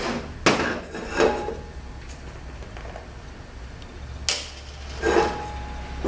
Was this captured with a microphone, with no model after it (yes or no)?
yes